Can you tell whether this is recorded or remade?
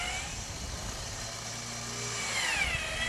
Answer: recorded